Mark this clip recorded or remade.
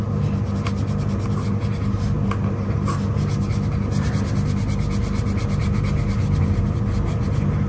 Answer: recorded